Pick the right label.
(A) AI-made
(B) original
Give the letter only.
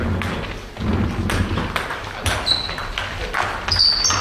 B